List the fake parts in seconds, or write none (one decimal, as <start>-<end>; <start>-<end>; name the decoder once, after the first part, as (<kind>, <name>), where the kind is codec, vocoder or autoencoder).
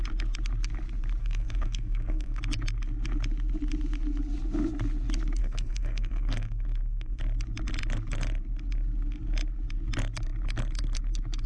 1.2-2.4 (codec, SNAC); 5.4-7.2